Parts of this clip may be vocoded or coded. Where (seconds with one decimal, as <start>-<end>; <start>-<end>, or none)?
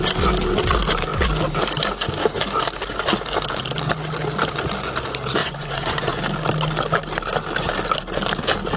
5.4-6.2